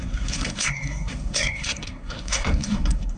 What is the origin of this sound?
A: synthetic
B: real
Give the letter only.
A